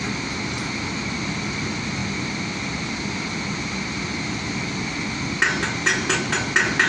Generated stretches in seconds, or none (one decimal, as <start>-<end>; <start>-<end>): none